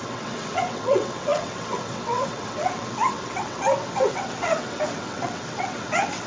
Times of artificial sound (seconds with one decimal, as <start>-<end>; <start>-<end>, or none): 0.0-6.3